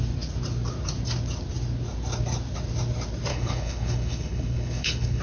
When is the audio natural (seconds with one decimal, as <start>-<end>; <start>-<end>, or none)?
0.0-3.3